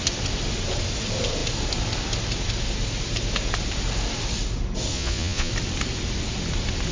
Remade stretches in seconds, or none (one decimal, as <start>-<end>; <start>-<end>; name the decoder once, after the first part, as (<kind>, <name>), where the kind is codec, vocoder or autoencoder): 4.9-5.5 (vocoder, Vocos)